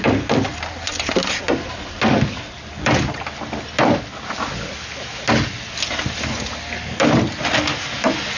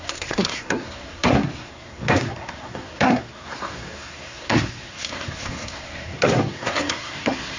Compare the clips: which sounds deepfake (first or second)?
second